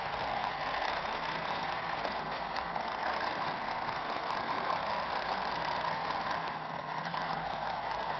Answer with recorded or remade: remade